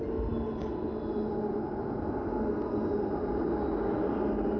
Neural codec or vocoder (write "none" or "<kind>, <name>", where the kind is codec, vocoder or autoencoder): none